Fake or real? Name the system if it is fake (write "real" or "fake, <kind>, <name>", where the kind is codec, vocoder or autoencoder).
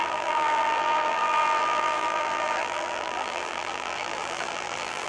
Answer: fake, vocoder, BigVGAN v2